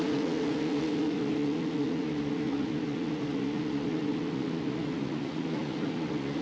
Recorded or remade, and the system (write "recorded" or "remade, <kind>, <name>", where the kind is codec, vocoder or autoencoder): remade, vocoder, Vocos